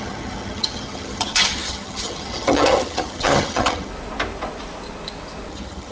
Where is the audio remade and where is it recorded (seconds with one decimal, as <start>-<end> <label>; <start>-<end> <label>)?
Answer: 0.0-3.9 remade; 3.9-5.5 recorded; 5.5-5.9 remade